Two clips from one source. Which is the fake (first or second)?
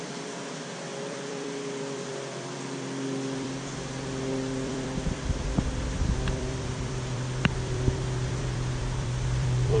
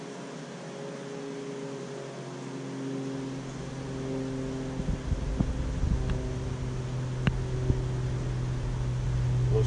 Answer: first